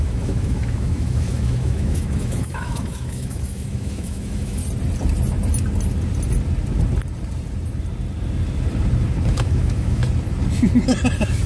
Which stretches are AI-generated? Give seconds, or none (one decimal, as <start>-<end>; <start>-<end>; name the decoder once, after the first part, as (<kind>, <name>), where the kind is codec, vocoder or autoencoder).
0.0-4.6 (autoencoder, DAC-VAE); 9.3-10.0